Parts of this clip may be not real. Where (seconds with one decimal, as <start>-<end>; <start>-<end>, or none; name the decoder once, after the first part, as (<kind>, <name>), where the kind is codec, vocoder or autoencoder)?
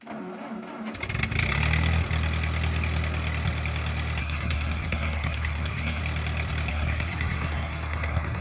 4.2-6.0 (codec, SNAC); 6.7-8.4